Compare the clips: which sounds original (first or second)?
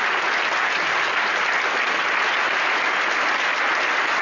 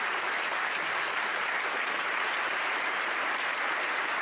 first